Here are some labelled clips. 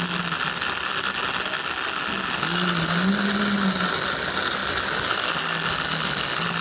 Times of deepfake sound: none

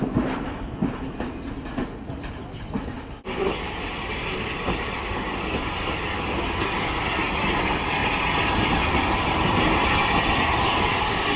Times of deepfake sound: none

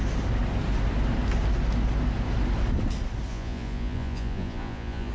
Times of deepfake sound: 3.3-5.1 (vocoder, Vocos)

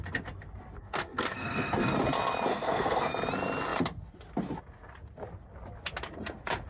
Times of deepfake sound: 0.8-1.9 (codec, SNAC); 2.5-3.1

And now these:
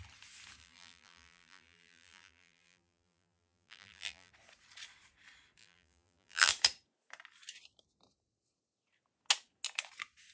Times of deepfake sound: 0.6-4.3 (vocoder, BigVGAN v2); 5.6-6.5

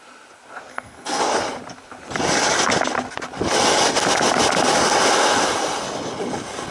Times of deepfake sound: 0.7-1.2 (codec, SNAC)